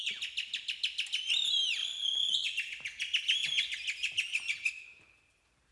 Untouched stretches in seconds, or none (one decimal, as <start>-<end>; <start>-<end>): 0.0-1.8; 2.5-5.7